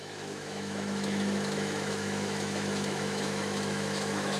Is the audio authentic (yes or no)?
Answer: no